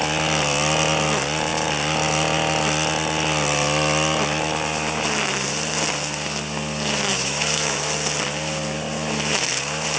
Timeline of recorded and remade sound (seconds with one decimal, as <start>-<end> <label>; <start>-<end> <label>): 0.0-7.1 recorded; 7.1-7.8 remade; 7.8-10.0 recorded